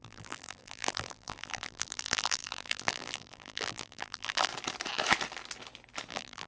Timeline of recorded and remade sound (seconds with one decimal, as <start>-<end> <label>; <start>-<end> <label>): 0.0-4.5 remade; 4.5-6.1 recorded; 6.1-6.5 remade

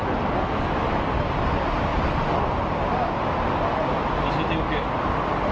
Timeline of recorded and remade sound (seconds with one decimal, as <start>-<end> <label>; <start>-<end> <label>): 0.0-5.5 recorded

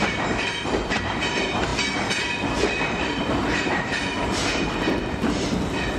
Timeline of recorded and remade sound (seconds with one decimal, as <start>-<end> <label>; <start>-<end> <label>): 0.0-1.7 remade; 1.7-2.5 recorded; 2.5-4.4 remade; 4.4-6.0 recorded

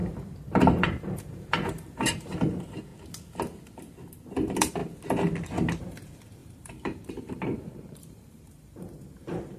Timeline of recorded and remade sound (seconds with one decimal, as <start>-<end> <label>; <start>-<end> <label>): 0.0-2.9 remade; 2.9-4.3 recorded; 4.3-4.8 remade; 4.8-5.8 recorded; 5.8-9.6 remade

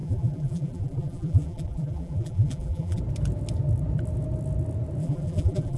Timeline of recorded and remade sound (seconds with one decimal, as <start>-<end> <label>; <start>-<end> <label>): 0.0-3.0 remade; 3.0-5.0 recorded; 5.0-5.8 remade

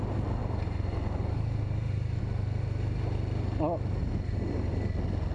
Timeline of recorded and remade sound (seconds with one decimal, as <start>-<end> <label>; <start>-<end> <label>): 0.0-0.4 recorded; 0.4-2.2 remade; 2.2-4.0 recorded; 4.0-4.8 remade; 4.8-5.3 recorded